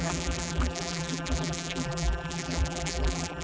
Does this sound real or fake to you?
fake